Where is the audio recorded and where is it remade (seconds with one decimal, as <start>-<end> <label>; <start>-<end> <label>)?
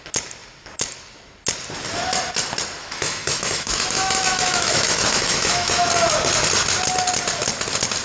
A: 0.0-2.8 recorded; 2.8-5.9 remade; 5.9-8.0 recorded